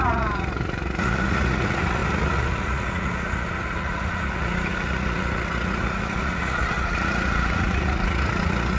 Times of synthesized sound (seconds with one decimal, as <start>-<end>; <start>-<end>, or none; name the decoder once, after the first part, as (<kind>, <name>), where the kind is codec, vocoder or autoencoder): 0.0-8.8 (vocoder, Vocos)